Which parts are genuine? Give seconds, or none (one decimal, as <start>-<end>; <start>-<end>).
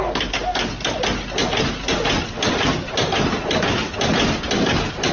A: 0.0-5.1